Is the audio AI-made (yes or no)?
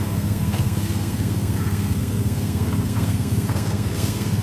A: yes